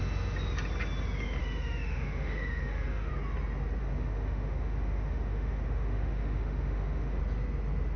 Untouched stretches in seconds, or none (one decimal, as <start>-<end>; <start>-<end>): 0.0-1.4; 3.1-3.8; 7.2-8.0